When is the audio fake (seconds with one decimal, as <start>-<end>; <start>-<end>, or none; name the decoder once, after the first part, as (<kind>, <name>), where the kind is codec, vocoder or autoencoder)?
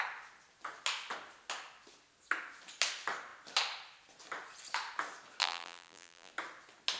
5.4-6.3 (vocoder, BigVGAN v2)